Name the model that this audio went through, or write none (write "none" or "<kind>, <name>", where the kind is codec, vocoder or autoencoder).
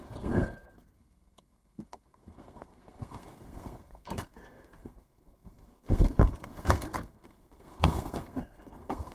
codec, SNAC